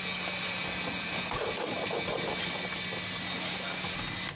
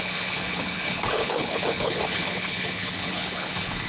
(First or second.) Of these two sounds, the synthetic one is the second